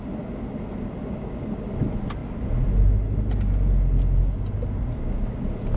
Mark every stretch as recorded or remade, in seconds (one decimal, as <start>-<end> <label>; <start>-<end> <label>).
0.0-5.8 recorded